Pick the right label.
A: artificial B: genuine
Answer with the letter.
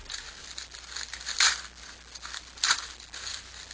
B